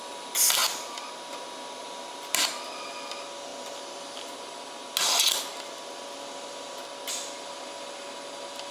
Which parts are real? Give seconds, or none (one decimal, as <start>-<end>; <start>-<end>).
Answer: 0.0-8.7